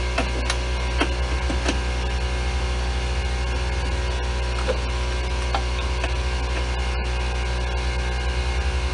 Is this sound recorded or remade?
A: recorded